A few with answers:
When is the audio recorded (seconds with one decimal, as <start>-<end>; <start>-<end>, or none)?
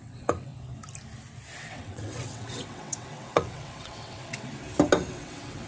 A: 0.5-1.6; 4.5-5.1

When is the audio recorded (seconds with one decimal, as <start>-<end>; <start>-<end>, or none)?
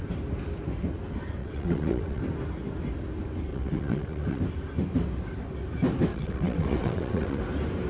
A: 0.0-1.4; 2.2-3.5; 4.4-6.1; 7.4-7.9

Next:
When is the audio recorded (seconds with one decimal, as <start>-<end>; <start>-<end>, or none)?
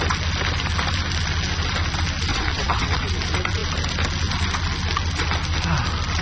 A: 0.0-2.3; 3.0-6.2